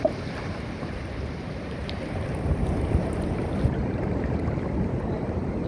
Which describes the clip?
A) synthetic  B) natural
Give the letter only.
A